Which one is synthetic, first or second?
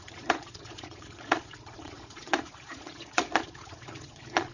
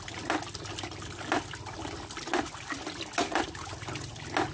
first